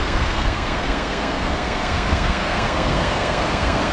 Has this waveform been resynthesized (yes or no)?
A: yes